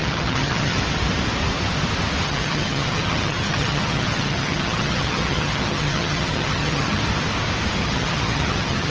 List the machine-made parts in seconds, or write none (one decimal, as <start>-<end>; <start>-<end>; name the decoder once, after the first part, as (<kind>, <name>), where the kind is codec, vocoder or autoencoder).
0.0-0.8 (vocoder, HiFi-GAN); 2.2-7.0; 7.8-8.9